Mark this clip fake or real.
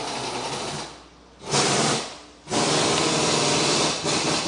real